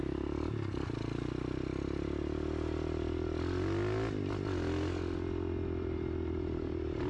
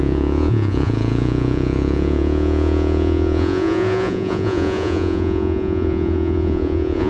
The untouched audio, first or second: first